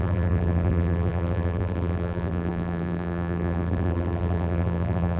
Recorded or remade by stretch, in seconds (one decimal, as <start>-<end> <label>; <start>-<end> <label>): 0.0-5.2 remade

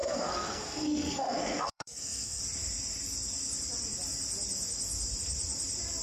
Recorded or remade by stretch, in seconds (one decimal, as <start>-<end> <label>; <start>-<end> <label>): 0.0-2.4 remade; 2.4-6.0 recorded